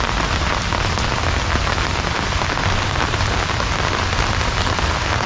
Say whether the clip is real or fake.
real